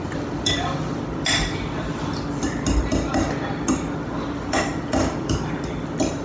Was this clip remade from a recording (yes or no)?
no